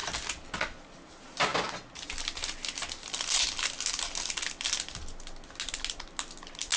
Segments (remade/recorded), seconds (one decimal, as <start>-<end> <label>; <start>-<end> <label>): 0.0-6.8 recorded